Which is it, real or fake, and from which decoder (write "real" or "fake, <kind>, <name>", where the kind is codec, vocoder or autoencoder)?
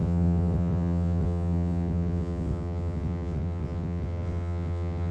fake, vocoder, WaveNeXt